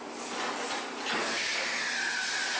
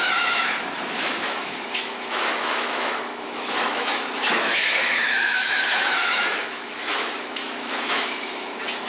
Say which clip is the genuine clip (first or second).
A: first